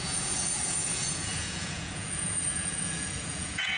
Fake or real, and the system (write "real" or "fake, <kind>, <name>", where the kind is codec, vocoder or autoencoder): fake, vocoder, Vocos